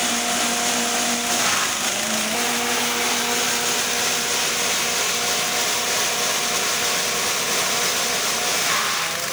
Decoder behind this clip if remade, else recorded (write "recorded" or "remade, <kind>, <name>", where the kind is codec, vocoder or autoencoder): recorded